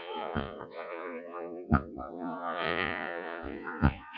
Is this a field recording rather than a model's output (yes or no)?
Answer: no